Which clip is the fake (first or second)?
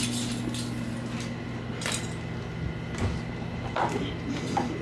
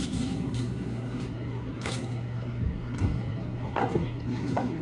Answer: second